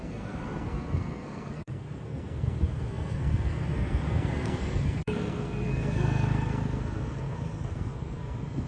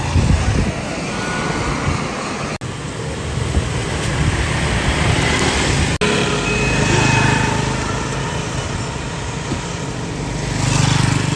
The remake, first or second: first